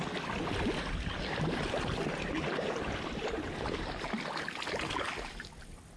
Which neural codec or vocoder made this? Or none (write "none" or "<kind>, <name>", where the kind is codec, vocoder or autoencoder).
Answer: none